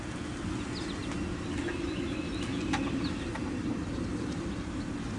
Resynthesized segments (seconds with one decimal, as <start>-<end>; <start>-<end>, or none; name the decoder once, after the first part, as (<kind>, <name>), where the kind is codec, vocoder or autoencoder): none